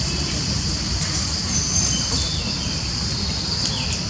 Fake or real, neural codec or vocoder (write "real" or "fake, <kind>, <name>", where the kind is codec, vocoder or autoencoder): real